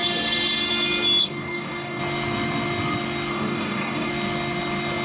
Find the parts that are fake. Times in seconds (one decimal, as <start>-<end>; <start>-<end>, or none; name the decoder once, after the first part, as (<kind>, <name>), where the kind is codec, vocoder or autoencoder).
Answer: 1.2-2.0 (codec, DAC); 3.3-4.1